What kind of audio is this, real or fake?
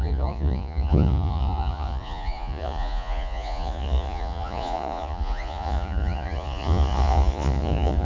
fake